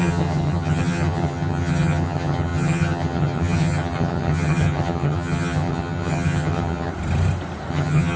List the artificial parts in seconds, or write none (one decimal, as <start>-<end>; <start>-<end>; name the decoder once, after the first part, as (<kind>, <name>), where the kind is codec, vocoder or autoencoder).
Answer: 0.0-6.9 (vocoder, HiFi-GAN); 7.7-8.2